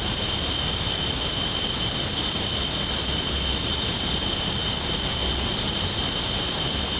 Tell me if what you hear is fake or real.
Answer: real